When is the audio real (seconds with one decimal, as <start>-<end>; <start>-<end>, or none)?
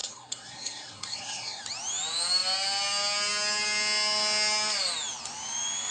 1.6-5.9